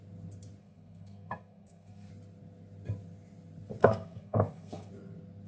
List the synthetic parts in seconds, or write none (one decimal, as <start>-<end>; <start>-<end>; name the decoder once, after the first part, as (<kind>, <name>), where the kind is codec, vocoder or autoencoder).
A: 0.6-2.1 (codec, SNAC); 3.8-4.9